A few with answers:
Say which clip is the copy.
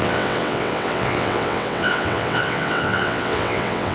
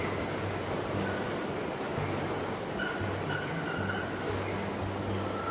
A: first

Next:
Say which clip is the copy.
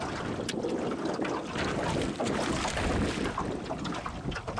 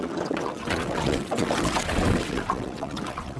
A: second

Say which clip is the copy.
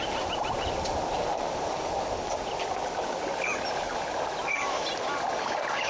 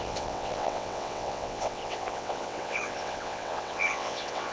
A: second